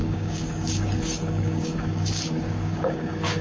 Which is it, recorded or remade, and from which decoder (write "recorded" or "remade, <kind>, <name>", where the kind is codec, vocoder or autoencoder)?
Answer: remade, codec, DAC